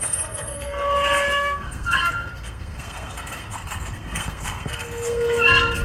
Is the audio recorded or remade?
remade